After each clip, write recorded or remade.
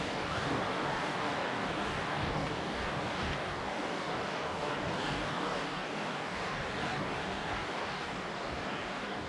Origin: remade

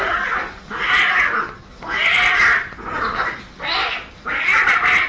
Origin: recorded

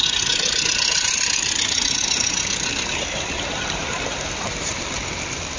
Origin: recorded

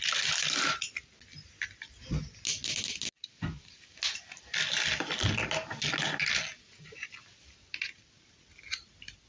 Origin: recorded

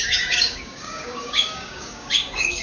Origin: remade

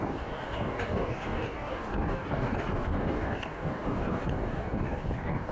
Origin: remade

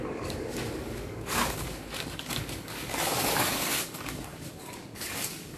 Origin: remade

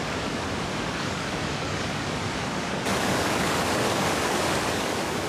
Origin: remade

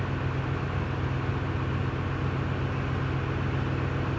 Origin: recorded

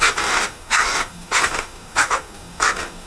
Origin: remade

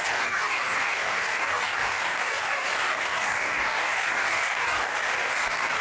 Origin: remade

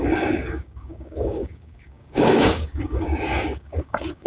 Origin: remade